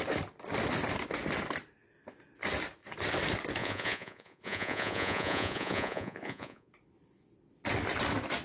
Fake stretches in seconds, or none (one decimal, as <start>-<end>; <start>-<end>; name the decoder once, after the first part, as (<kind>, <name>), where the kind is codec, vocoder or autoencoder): 3.6-6.7 (vocoder, Vocos)